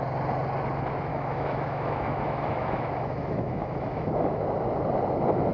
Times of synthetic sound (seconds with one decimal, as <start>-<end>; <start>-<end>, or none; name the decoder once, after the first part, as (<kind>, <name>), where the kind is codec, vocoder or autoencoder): 1.1-4.4 (autoencoder, DAC-VAE)